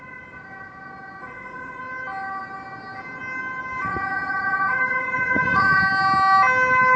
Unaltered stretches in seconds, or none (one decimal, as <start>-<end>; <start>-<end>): 0.0-1.2; 1.8-3.8; 5.8-7.0